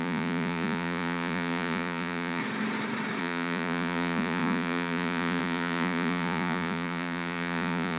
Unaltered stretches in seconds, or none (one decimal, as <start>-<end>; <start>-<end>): 2.4-3.2